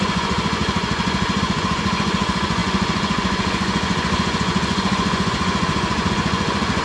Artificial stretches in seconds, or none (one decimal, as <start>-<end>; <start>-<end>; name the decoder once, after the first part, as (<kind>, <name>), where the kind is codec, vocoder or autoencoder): 0.0-6.8 (vocoder, Vocos)